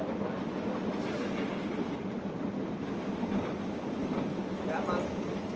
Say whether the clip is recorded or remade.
recorded